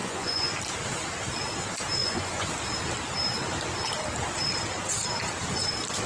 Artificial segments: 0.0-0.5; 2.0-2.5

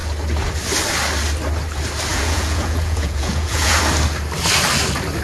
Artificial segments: 2.1-3.8

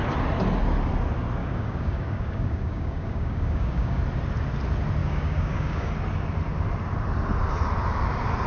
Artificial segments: 1.4-4.0; 5.0-5.9

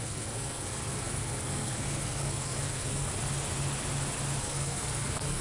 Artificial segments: 0.0-3.1; 4.4-5.4